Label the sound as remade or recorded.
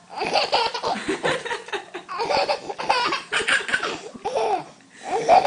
recorded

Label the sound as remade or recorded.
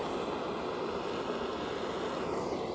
recorded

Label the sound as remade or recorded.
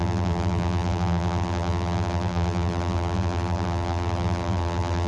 remade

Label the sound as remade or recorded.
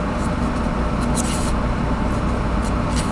recorded